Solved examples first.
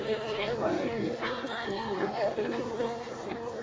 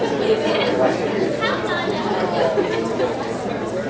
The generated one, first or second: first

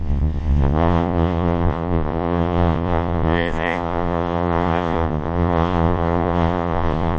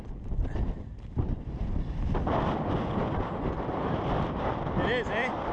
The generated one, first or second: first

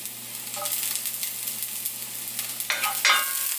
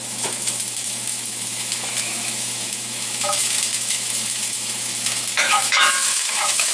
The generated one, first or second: second